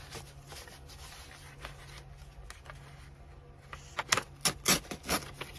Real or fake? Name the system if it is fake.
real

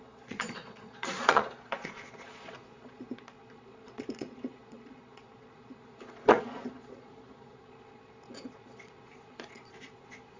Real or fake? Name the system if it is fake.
fake, vocoder, Vocos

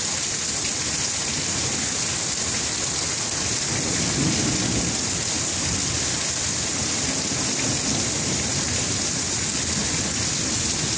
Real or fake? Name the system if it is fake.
real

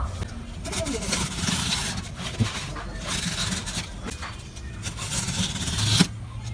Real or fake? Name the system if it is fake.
real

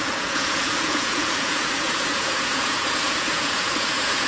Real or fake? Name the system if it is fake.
fake, vocoder, Vocos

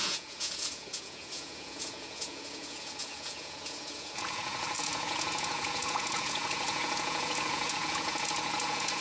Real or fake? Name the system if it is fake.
fake, vocoder, Vocos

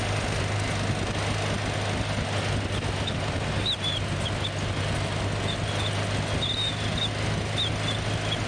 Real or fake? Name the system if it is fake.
real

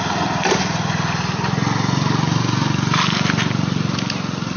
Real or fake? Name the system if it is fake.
real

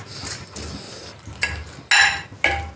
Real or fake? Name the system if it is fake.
real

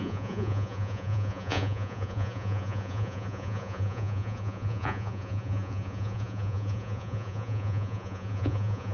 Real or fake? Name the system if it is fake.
fake, vocoder, Vocos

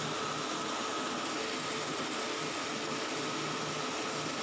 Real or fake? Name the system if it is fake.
real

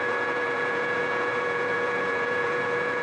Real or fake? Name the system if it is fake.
fake, vocoder, Vocos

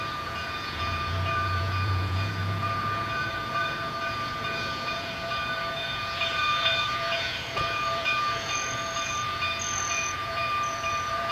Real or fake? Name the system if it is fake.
fake, vocoder, Vocos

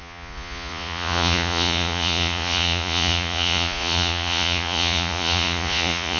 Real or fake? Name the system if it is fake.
fake, vocoder, Vocos